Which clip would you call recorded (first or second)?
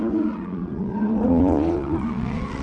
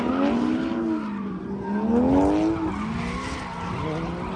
second